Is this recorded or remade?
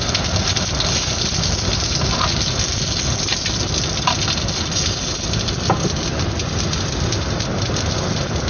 recorded